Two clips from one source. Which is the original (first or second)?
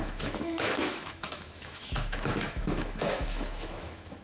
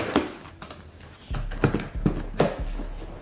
second